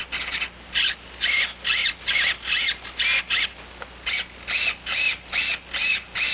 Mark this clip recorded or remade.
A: recorded